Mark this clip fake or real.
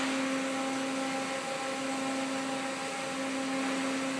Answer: real